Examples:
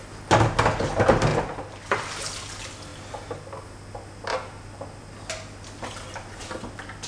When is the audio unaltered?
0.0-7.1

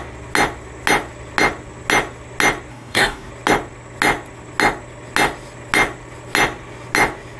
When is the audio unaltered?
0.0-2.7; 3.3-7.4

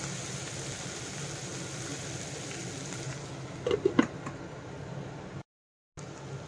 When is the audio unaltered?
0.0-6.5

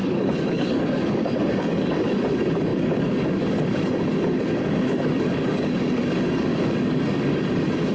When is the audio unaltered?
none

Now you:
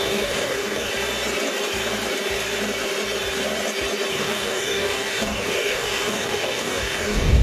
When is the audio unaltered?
0.9-4.1

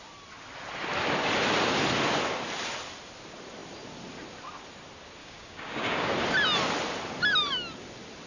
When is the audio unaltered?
0.0-5.2; 6.1-8.3

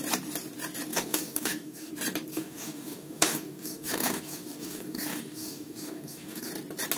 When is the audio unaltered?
0.0-0.9; 1.9-2.3; 6.5-7.0

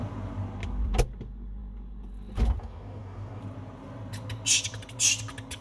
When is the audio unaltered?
0.0-2.6; 3.4-5.6